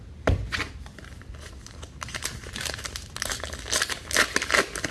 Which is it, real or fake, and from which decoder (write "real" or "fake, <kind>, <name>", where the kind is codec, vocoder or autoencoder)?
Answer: real